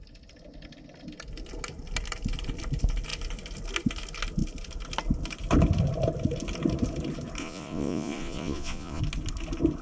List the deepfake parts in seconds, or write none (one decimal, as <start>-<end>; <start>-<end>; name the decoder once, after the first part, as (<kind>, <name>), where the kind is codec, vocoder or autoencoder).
7.4-9.0 (vocoder, Vocos)